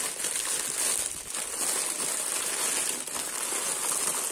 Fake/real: real